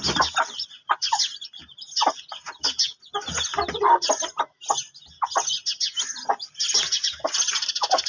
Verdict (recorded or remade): recorded